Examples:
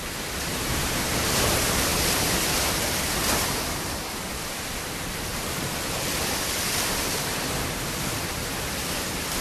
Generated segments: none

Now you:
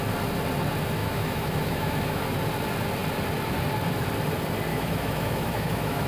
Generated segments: 1.0-2.2; 4.7-6.1

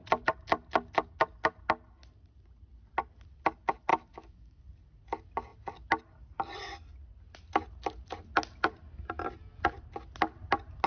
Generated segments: 3.9-4.6